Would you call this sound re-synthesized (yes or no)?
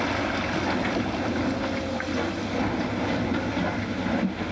no